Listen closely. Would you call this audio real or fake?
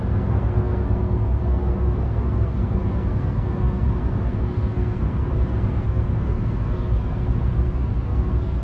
fake